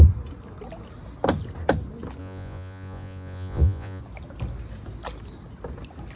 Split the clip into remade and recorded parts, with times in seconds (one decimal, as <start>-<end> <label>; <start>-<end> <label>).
0.0-2.2 recorded; 2.2-4.0 remade; 4.0-6.2 recorded